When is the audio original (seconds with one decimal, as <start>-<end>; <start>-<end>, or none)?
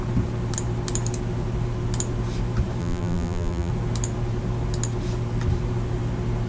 0.0-2.8; 3.7-6.5